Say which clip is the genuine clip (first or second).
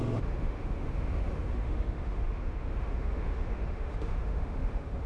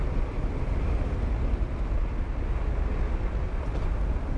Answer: second